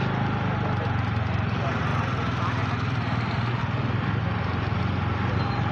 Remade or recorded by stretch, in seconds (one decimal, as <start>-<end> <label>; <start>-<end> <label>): 0.0-5.7 recorded